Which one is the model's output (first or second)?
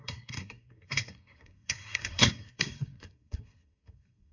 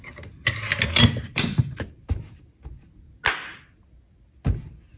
first